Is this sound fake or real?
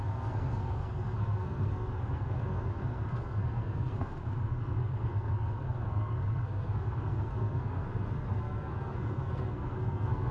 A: fake